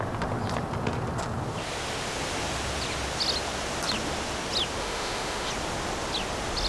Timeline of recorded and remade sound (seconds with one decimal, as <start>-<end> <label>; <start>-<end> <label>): 0.0-4.8 recorded; 4.8-5.5 remade; 5.5-6.7 recorded